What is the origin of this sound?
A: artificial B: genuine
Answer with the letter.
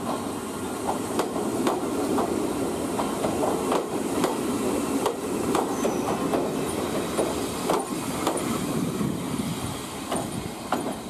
B